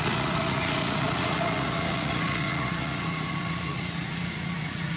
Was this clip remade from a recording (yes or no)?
yes